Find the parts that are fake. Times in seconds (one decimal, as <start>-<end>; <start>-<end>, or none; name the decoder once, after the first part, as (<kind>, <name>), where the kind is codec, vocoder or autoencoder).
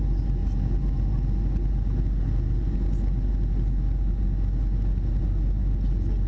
none